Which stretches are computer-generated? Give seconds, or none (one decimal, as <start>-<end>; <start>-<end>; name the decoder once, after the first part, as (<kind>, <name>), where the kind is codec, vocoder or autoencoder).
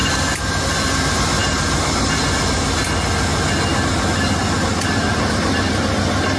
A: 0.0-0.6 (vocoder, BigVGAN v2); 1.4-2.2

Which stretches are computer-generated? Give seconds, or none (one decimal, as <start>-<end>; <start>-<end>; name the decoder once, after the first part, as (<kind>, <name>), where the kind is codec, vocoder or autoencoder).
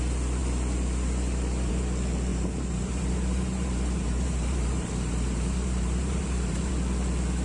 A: 2.3-6.7 (vocoder, BigVGAN v2)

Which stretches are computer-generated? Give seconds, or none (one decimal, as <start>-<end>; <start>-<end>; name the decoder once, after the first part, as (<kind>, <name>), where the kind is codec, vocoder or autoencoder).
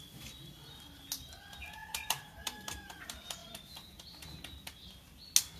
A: 1.8-3.0 (vocoder, BigVGAN v2)